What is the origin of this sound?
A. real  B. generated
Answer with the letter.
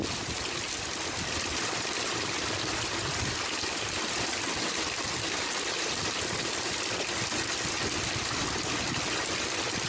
A